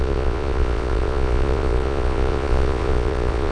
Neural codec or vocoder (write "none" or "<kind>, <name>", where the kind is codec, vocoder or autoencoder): vocoder, Vocos